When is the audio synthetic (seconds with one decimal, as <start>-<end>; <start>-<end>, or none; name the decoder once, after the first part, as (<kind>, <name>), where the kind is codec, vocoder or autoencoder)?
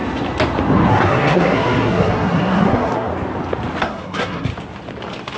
0.9-3.1 (codec, SNAC); 3.8-4.5